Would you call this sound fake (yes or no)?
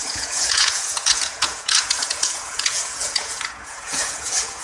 yes